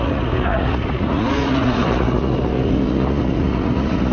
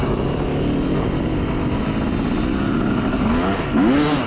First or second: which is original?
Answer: second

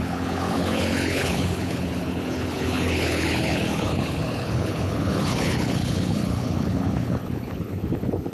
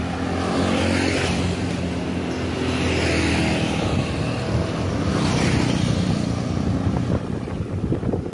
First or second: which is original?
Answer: second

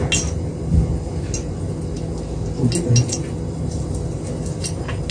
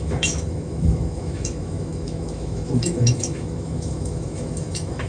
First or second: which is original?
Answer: first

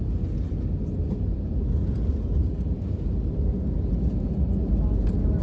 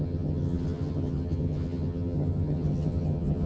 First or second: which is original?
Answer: first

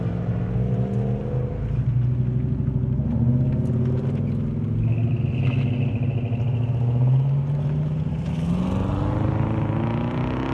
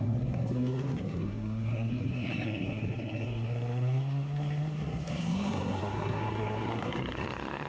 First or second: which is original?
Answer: first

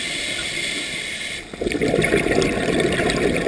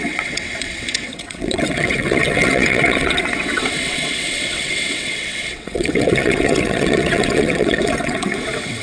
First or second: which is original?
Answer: first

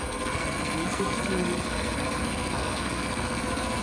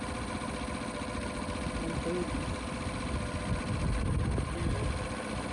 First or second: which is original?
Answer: second